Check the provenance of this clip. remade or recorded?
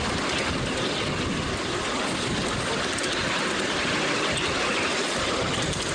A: recorded